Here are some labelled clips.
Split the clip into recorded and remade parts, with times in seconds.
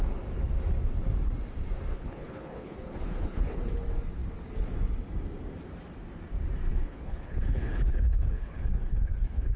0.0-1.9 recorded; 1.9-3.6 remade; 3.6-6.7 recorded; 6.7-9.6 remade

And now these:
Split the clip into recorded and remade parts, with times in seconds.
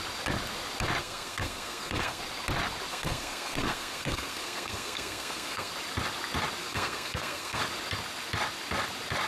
0.0-1.0 recorded; 1.0-2.2 remade; 2.2-2.9 recorded; 2.9-5.7 remade; 5.7-6.6 recorded; 6.6-7.6 remade; 7.6-9.3 recorded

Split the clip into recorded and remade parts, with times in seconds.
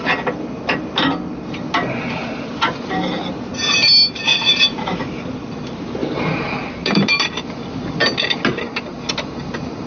0.0-4.3 recorded; 4.3-5.0 remade; 5.0-6.0 recorded; 6.0-6.7 remade; 6.7-9.9 recorded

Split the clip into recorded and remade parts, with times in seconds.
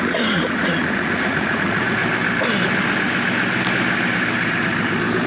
0.0-2.0 remade; 2.0-5.3 recorded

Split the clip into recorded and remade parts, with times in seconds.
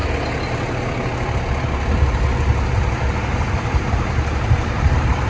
0.0-3.2 recorded; 3.2-5.3 remade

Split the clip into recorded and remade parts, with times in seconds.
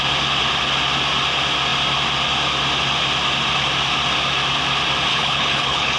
0.0-5.1 recorded; 5.1-6.0 remade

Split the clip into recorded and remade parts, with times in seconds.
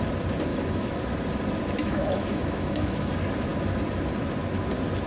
0.0-0.5 recorded; 0.5-1.0 remade; 1.0-1.8 recorded; 1.8-3.1 remade; 3.1-5.1 recorded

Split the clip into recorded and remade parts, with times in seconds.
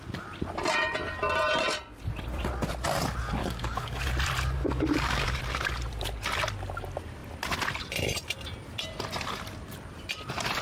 0.0-3.4 recorded; 3.4-4.0 remade; 4.0-4.6 recorded; 4.6-5.4 remade; 5.4-10.6 recorded